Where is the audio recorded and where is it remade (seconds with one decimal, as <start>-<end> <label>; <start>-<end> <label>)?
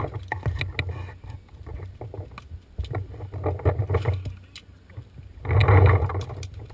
0.0-6.7 recorded